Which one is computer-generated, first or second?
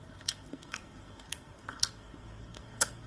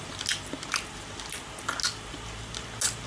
first